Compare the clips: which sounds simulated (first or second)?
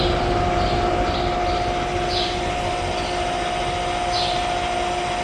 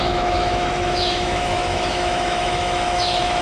second